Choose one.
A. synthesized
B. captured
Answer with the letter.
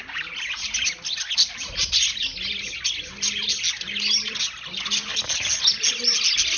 B